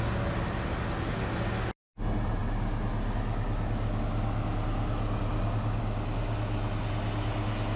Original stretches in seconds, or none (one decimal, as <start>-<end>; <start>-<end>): 0.0-7.8